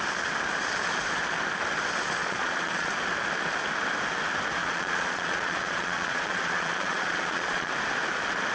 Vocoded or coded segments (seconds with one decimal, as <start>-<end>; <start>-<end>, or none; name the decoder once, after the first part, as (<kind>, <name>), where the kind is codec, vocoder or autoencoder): 2.2-2.9 (vocoder, Vocos); 4.6-7.7